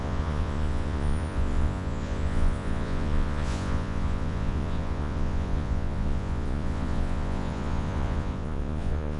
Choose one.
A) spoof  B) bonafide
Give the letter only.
A